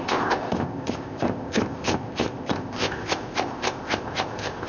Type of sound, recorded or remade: remade